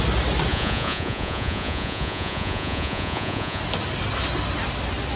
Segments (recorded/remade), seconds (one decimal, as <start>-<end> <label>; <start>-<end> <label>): 0.0-0.5 recorded; 0.5-3.6 remade; 3.6-5.2 recorded